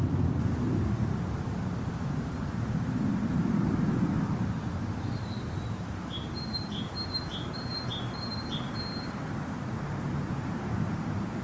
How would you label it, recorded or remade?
remade